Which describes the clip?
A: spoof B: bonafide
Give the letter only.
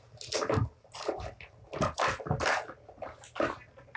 B